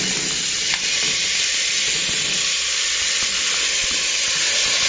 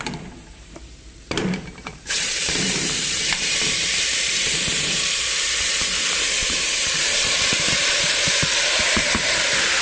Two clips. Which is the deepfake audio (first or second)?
second